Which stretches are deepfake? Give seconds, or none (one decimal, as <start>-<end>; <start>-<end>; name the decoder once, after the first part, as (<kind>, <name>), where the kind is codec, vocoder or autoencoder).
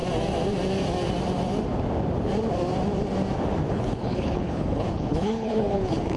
3.7-6.2 (codec, HILCodec)